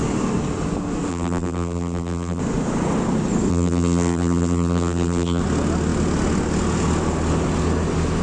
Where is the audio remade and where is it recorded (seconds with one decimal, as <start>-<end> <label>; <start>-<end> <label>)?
0.0-1.1 recorded; 1.1-2.4 remade; 2.4-3.5 recorded; 3.5-5.4 remade; 5.4-8.2 recorded